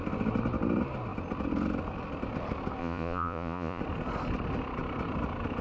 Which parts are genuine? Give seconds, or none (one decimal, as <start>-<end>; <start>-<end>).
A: 0.0-2.8; 3.8-5.6